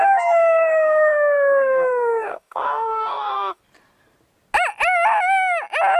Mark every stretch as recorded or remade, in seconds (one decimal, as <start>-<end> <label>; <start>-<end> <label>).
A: 0.0-3.6 remade; 3.6-6.0 recorded